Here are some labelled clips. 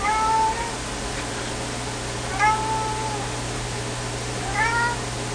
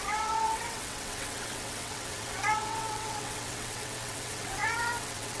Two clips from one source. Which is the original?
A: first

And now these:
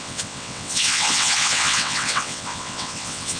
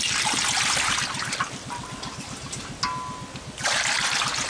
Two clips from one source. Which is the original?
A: second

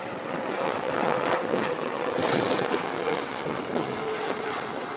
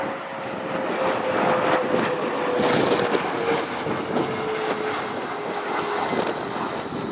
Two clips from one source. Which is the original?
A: second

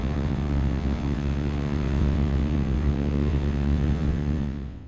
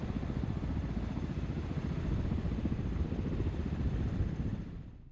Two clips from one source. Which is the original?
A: second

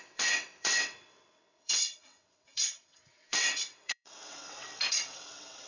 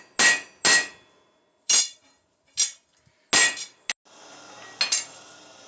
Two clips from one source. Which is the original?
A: second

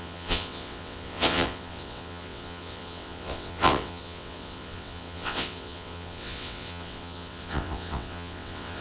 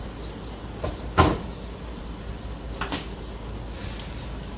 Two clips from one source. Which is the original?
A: second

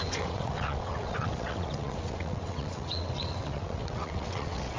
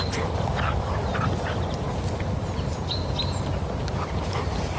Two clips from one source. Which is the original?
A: second